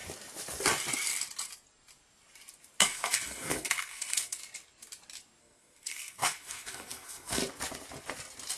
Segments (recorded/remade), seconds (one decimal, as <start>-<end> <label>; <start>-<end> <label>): 0.0-2.8 recorded; 2.8-4.4 remade; 4.4-5.4 recorded; 5.4-7.4 remade; 7.4-8.6 recorded